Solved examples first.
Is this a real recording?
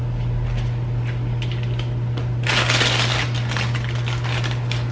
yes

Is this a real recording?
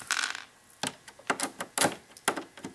yes